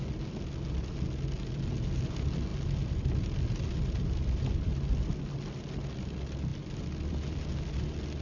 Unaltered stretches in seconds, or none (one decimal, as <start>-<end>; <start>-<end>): 0.0-8.2